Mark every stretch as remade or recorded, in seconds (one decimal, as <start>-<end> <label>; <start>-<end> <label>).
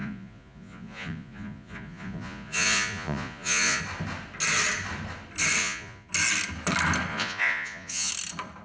0.0-3.8 remade; 3.8-5.6 recorded; 5.6-6.1 remade; 6.1-7.1 recorded; 7.1-8.1 remade; 8.1-8.6 recorded